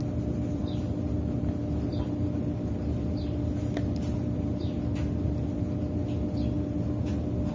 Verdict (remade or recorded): recorded